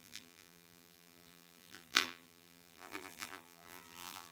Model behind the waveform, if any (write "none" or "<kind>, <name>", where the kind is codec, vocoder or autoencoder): vocoder, BigVGAN v2